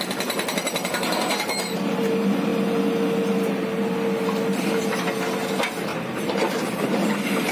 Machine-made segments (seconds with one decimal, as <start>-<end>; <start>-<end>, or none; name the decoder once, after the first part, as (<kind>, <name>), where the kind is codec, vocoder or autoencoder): 5.9-6.4 (vocoder, BigVGAN v2)